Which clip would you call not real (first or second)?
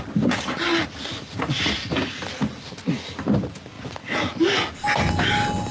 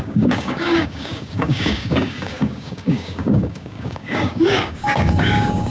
second